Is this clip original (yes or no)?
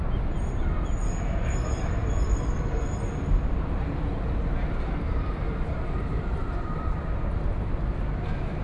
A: yes